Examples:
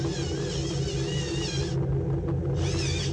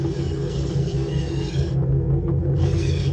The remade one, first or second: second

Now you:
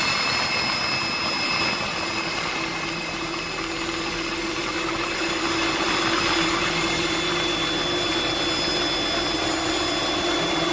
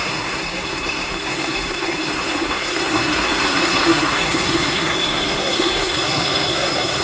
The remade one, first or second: second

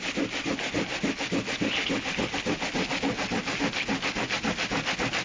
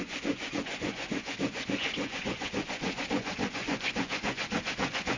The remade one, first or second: second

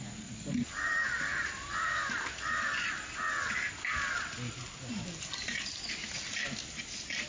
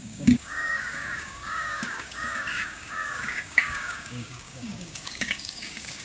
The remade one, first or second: second